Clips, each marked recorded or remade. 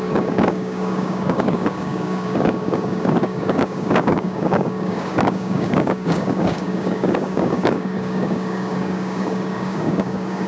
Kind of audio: remade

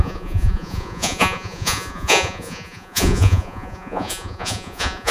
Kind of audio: remade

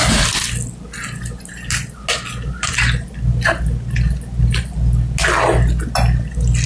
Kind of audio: recorded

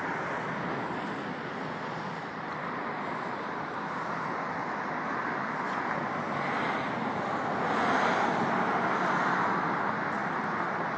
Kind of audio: recorded